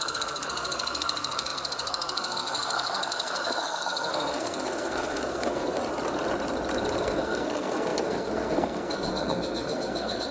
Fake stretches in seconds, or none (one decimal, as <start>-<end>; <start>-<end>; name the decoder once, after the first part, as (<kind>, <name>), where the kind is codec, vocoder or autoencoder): 0.0-5.8 (codec, SNAC); 7.0-10.3